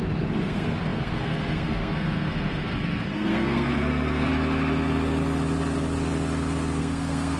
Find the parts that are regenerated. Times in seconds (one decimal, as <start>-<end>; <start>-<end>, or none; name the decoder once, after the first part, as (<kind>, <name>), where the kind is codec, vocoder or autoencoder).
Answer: 0.0-4.3 (codec, SNAC); 6.8-7.4